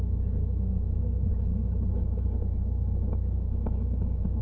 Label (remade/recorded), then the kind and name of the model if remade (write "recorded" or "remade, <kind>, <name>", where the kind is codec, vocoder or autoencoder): remade, autoencoder, DAC-VAE